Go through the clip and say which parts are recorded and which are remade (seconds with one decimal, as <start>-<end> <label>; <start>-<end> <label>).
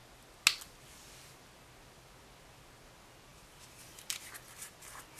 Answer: 0.0-5.2 recorded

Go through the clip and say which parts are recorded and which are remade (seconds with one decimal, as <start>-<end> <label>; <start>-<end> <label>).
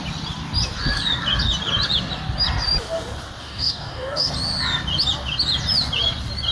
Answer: 0.0-3.4 recorded; 3.4-4.3 remade; 4.3-6.5 recorded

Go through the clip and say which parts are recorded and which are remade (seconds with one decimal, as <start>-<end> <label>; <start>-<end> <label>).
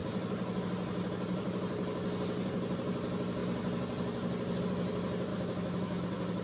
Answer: 0.0-5.3 recorded; 5.3-6.0 remade; 6.0-6.4 recorded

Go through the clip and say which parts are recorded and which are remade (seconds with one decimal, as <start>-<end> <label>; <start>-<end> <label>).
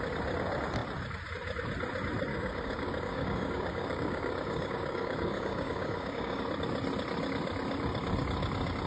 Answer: 0.0-2.3 recorded; 2.3-6.4 remade; 6.4-8.9 recorded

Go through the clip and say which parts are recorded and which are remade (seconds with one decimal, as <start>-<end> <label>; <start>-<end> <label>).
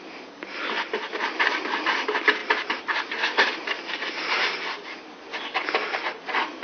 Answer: 0.0-2.4 recorded; 2.4-3.6 remade; 3.6-6.6 recorded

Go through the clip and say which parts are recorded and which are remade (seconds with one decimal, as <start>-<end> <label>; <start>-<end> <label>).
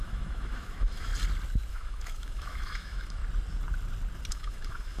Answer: 0.0-1.1 remade; 1.1-1.7 recorded; 1.7-3.2 remade; 3.2-4.3 recorded; 4.3-5.0 remade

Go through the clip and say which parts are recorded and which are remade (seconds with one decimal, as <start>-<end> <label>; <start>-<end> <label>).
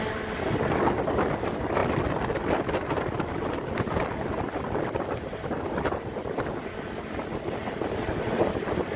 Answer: 0.0-9.0 recorded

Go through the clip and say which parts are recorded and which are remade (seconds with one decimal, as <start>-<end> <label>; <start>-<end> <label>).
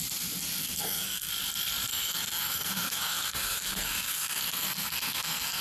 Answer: 0.0-0.6 recorded; 0.6-1.3 remade; 1.3-1.9 recorded; 1.9-5.6 remade